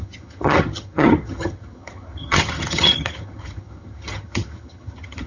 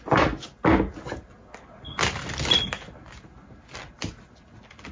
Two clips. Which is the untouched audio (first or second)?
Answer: second